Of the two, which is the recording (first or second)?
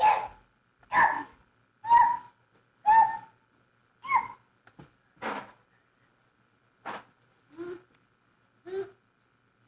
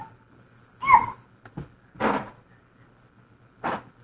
first